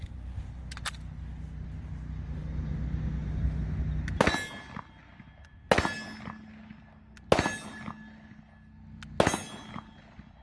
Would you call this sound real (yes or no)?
yes